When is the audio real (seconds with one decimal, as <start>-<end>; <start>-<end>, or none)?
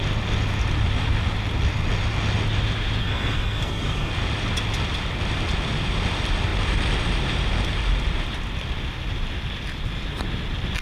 0.0-3.0; 4.1-10.8